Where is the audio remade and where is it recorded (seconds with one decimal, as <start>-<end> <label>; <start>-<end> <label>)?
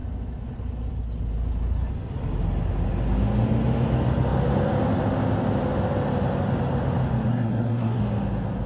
0.0-7.3 recorded; 7.3-8.0 remade; 8.0-8.7 recorded